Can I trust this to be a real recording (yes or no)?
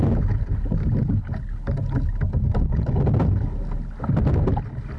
yes